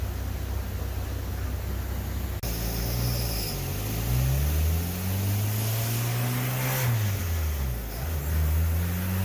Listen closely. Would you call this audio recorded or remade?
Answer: recorded